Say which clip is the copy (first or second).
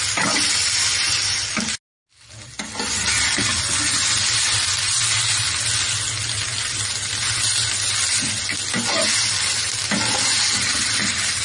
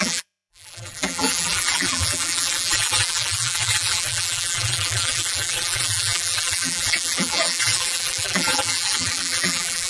second